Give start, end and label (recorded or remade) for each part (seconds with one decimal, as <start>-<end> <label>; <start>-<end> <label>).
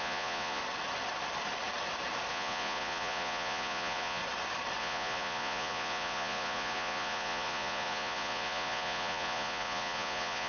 0.0-0.6 remade; 0.6-2.3 recorded; 2.3-4.2 remade; 4.2-4.8 recorded; 4.8-10.5 remade